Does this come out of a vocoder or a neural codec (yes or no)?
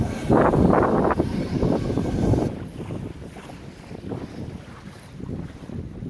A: no